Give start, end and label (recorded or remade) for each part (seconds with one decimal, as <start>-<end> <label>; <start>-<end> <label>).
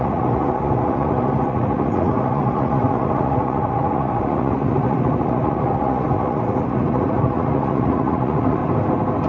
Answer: 0.0-8.6 remade; 8.6-9.3 recorded